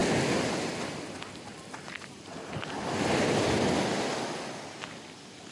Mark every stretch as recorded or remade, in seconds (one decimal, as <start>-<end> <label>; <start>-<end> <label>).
0.0-5.5 recorded